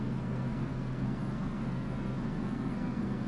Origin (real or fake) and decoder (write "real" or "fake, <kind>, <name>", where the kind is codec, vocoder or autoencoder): fake, codec, SNAC